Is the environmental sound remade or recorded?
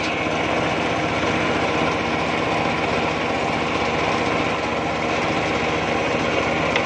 recorded